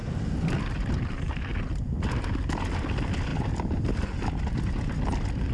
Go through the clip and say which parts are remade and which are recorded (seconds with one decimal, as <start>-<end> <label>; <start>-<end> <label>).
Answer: 0.0-5.5 recorded